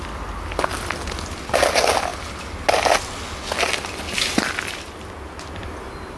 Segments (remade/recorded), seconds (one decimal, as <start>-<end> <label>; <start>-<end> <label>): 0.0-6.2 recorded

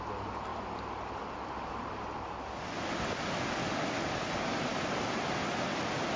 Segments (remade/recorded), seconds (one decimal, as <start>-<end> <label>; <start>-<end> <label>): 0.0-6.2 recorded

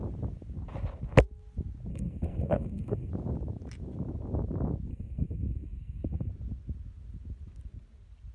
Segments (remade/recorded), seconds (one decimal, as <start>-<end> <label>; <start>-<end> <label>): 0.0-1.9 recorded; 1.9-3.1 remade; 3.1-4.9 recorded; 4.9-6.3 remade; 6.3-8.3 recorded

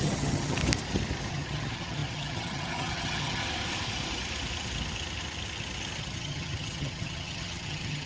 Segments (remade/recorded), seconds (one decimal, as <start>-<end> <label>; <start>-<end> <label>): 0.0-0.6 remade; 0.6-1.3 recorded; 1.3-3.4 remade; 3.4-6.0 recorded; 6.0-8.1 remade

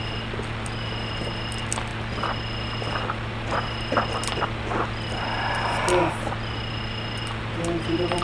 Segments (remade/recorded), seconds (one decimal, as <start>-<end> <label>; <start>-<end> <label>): 0.0-8.2 recorded